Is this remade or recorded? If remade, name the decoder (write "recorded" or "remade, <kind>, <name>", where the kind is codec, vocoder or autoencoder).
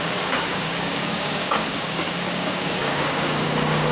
remade, codec, DAC